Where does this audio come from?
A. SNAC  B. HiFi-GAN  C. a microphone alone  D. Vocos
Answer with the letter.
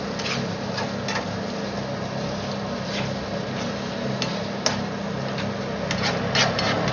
C